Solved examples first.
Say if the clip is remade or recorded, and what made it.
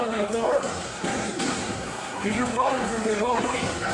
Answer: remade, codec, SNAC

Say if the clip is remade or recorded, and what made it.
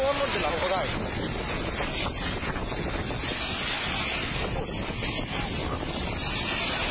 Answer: recorded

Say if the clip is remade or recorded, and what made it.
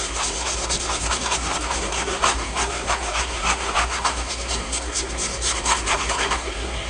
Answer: remade, codec, SNAC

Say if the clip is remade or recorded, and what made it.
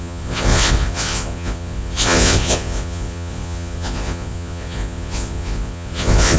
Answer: remade, vocoder, Vocos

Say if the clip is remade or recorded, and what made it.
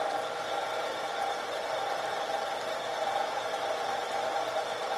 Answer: recorded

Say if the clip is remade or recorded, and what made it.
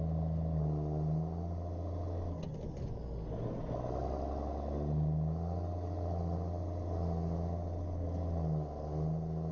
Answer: recorded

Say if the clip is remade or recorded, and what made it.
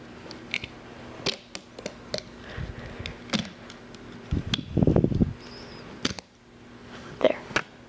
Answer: recorded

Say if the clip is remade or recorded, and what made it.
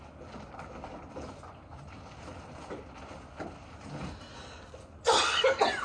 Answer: recorded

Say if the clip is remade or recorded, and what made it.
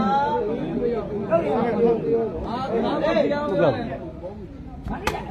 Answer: recorded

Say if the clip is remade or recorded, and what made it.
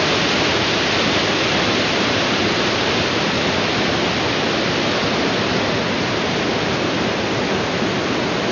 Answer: recorded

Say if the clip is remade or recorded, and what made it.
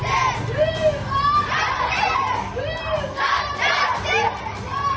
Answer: recorded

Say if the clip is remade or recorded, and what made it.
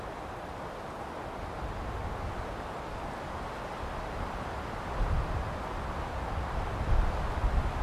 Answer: recorded